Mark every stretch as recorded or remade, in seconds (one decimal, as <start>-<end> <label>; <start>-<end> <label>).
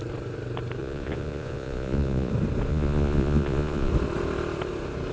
0.0-0.8 recorded; 0.8-2.3 remade; 2.3-2.7 recorded; 2.7-3.9 remade; 3.9-5.1 recorded